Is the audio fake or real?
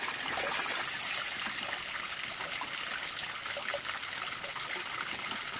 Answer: real